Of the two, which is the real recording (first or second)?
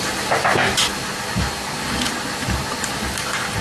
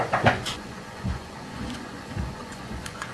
first